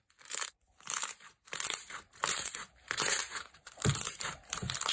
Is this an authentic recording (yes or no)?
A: no